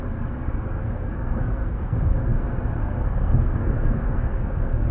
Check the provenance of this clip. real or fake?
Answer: fake